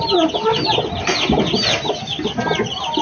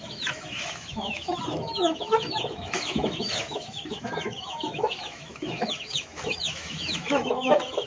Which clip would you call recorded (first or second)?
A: first